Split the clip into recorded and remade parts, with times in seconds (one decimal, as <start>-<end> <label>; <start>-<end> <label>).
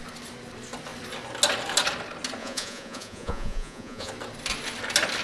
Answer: 0.0-2.4 recorded; 2.4-4.1 remade; 4.1-5.2 recorded